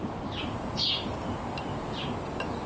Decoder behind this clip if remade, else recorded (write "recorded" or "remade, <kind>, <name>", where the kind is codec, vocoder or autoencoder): recorded